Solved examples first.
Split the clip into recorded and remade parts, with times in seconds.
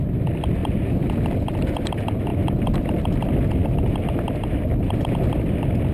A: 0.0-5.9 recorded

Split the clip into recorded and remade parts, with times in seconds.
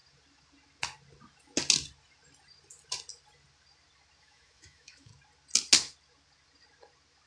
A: 0.0-4.2 recorded; 4.2-5.1 remade; 5.1-7.3 recorded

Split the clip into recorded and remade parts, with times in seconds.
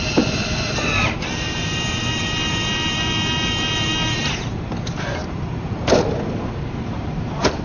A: 0.0-7.6 remade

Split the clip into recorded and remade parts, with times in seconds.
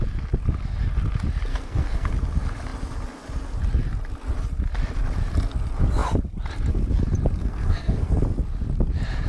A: 0.0-1.5 recorded; 1.5-2.1 remade; 2.1-7.4 recorded; 7.4-8.1 remade; 8.1-9.3 recorded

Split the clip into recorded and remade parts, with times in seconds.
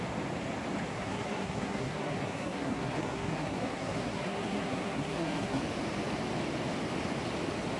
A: 0.0-0.9 recorded; 0.9-5.6 remade; 5.6-7.8 recorded